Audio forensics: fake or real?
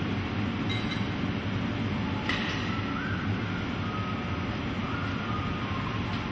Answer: real